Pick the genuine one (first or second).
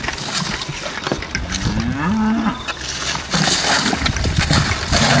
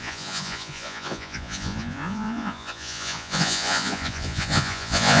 first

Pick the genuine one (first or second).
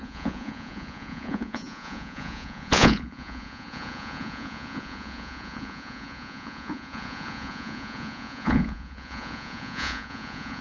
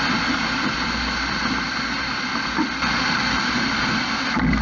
second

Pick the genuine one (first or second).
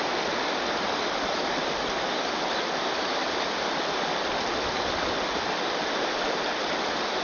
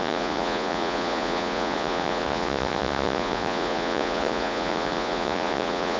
first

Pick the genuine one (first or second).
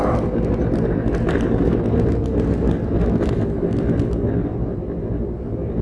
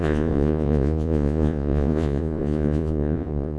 first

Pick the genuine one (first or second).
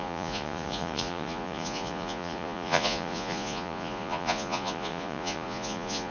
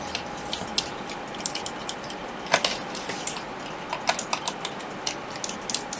second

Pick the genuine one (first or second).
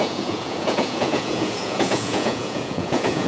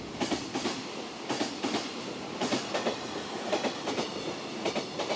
second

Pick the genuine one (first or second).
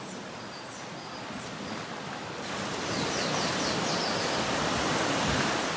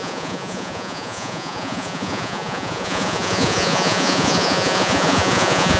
first